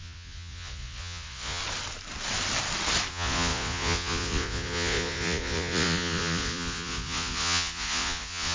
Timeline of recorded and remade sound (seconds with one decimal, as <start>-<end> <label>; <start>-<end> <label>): 0.0-1.6 remade; 1.6-3.1 recorded; 3.1-8.5 remade